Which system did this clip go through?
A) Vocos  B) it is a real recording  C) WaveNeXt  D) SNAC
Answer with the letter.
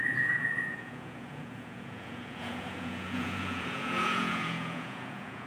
A